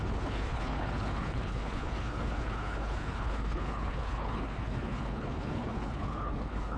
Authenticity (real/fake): fake